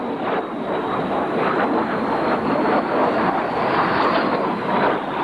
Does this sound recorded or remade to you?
recorded